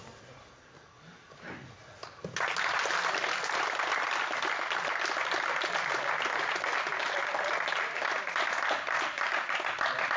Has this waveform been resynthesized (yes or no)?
no